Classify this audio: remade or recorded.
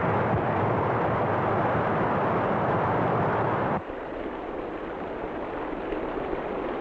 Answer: recorded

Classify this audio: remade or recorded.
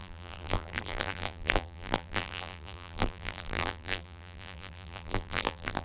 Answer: remade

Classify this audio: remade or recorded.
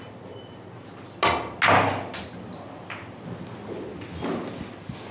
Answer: recorded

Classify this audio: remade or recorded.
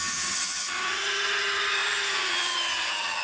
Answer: remade